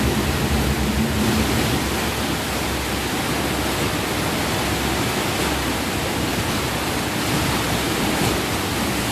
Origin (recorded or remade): recorded